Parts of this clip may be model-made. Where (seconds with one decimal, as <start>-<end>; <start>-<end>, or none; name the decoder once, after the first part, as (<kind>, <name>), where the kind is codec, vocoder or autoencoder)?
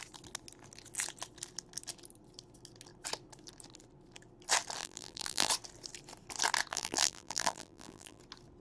4.8-5.5 (vocoder, BigVGAN v2); 6.7-8.2